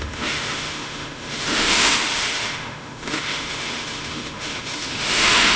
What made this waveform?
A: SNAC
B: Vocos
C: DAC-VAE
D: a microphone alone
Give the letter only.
C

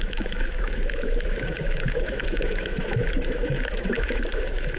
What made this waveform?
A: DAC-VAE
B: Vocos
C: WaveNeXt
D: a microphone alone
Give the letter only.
A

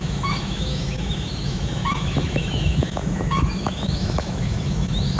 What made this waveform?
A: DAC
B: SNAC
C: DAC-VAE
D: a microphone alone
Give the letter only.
C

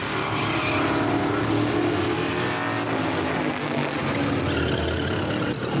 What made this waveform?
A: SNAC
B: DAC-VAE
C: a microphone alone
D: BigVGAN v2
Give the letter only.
C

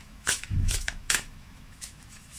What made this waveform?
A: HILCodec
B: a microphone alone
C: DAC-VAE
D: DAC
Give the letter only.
C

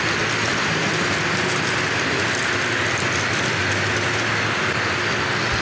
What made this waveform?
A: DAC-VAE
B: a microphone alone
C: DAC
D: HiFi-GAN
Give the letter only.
B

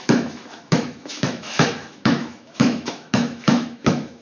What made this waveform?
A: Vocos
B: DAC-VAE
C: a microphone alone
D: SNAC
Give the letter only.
B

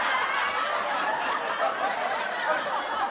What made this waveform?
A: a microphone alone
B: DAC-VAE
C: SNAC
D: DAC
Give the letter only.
A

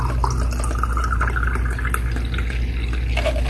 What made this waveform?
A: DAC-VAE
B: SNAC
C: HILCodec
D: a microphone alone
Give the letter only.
D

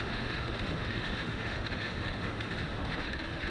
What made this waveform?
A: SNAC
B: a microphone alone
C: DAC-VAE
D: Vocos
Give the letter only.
C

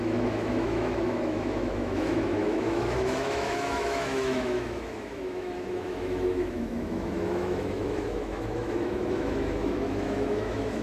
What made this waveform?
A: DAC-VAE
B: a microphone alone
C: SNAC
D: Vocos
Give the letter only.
A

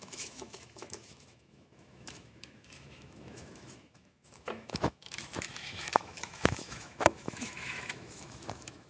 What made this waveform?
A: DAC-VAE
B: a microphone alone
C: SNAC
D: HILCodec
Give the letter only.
A